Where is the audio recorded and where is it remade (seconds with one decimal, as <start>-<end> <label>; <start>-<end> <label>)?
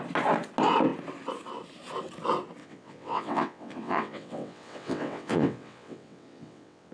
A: 0.0-2.6 recorded; 2.6-6.9 remade